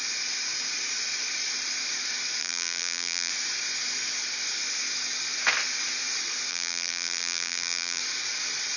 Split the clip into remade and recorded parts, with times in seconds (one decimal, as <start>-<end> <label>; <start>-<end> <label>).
0.0-2.4 recorded; 2.4-3.3 remade; 3.3-6.5 recorded; 6.5-8.0 remade; 8.0-8.8 recorded